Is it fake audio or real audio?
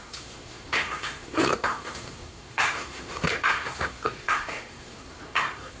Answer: fake